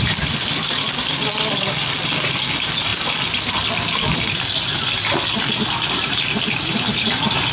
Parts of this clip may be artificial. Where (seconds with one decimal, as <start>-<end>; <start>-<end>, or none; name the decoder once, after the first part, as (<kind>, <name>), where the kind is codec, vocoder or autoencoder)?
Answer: none